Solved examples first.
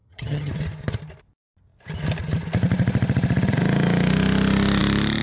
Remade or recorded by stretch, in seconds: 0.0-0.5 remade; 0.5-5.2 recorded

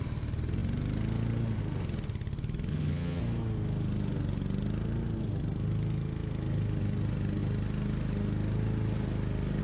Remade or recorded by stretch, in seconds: 0.0-2.7 recorded; 2.7-3.2 remade; 3.2-9.6 recorded

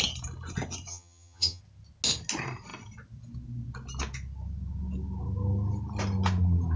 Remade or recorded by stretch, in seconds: 0.0-0.9 recorded; 0.9-1.6 remade; 1.6-6.8 recorded

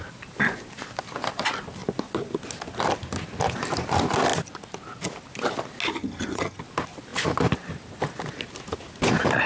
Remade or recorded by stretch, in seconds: 0.0-6.0 recorded; 6.0-6.6 remade; 6.6-9.5 recorded

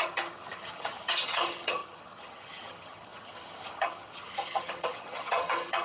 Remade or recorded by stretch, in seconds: 0.0-5.8 remade

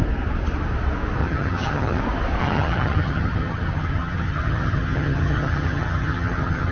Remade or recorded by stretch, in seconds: 0.0-1.2 recorded; 1.2-2.0 remade; 2.0-2.4 recorded; 2.4-6.7 remade

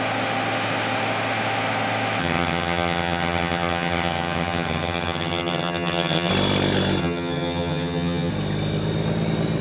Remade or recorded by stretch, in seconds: 0.0-2.2 recorded; 2.2-6.3 remade; 6.3-7.0 recorded; 7.0-8.3 remade; 8.3-9.6 recorded